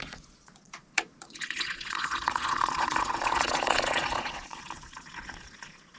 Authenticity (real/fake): fake